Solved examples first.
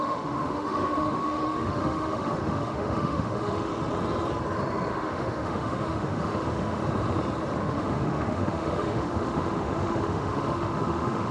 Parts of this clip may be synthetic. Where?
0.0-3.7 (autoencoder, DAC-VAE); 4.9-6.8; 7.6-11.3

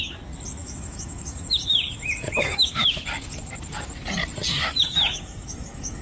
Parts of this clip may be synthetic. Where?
0.6-3.0 (autoencoder, DAC-VAE); 4.5-6.0